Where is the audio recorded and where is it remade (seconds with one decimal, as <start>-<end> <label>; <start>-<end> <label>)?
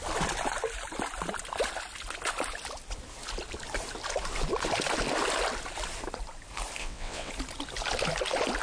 0.0-6.8 recorded; 6.8-7.3 remade; 7.3-8.6 recorded